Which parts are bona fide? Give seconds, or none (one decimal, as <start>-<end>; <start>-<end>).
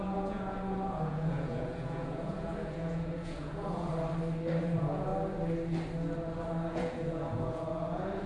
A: 3.9-4.6; 5.1-6.7